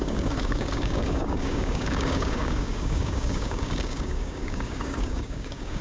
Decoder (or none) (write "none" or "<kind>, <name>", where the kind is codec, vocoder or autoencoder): codec, DAC